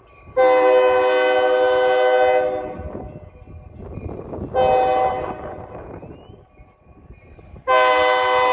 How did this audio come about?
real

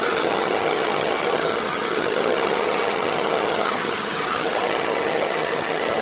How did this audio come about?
fake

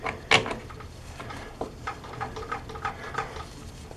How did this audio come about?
real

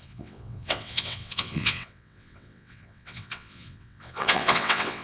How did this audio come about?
fake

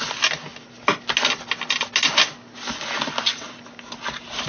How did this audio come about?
real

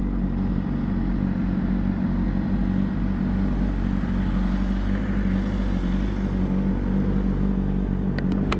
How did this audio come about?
real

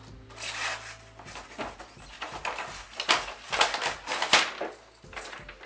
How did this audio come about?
real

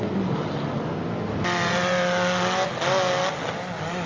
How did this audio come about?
real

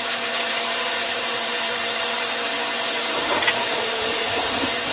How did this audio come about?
fake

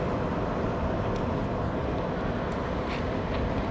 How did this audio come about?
real